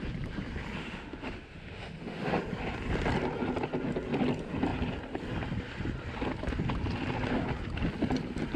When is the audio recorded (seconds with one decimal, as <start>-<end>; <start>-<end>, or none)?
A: 0.0-0.8; 2.4-8.6